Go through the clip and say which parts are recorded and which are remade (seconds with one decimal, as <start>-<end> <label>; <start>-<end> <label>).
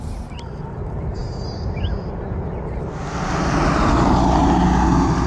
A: 0.0-5.3 recorded